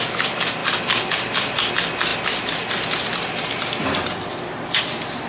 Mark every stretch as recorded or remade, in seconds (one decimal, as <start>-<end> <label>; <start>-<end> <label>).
0.0-5.3 recorded